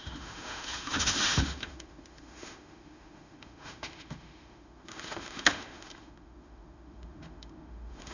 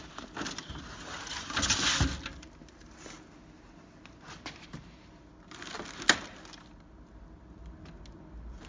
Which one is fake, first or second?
first